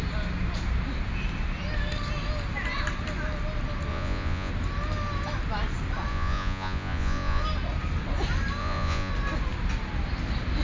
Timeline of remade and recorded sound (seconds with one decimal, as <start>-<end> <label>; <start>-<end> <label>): 0.0-3.9 recorded; 3.9-4.5 remade; 4.5-6.1 recorded; 6.1-7.4 remade; 7.4-8.6 recorded; 8.6-9.1 remade; 9.1-10.6 recorded